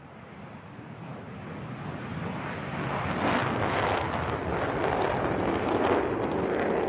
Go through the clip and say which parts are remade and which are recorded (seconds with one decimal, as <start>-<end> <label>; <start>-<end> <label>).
0.0-6.9 recorded